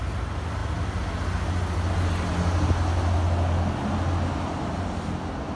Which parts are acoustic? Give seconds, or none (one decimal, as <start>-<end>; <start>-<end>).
0.0-5.6